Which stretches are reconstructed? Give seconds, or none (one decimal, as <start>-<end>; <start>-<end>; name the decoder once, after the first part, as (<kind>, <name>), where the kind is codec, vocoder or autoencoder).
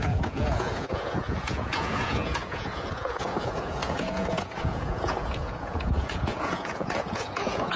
0.0-7.8 (vocoder, Vocos)